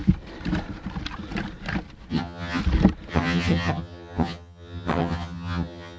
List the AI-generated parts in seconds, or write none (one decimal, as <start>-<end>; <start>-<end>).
2.1-2.6; 3.1-6.0